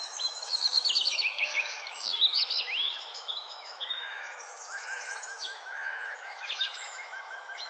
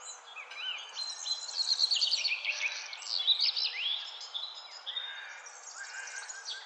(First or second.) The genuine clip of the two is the second